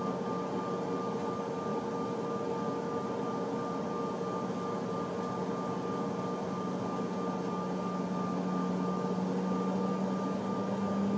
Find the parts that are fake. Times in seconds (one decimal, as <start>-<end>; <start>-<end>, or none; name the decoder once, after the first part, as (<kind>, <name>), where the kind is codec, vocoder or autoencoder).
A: none

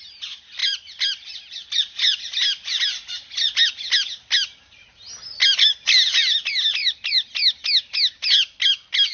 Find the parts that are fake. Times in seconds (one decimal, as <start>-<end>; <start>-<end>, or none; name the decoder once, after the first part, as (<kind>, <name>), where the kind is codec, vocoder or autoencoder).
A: none